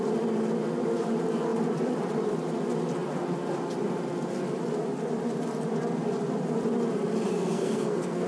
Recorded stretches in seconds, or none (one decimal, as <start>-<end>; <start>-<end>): 0.0-7.3